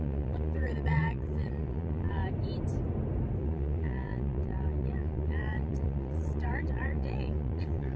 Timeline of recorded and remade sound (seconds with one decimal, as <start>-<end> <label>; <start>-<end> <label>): 0.0-2.2 remade; 2.2-3.4 recorded; 3.4-8.0 remade